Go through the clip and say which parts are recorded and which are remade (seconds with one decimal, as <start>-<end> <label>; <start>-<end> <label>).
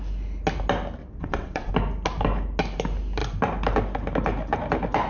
0.0-1.0 recorded; 1.0-1.7 remade; 1.7-5.1 recorded